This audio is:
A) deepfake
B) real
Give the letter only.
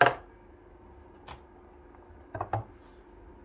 B